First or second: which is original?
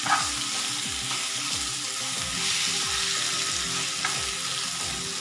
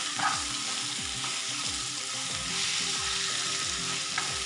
first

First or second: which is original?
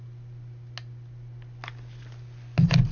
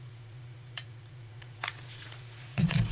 first